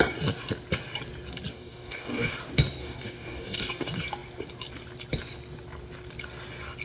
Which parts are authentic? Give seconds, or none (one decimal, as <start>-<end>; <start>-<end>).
0.0-1.5; 2.3-2.8; 3.8-6.8